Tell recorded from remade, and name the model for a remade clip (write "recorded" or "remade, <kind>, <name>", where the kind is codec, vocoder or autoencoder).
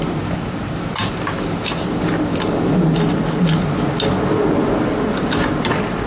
recorded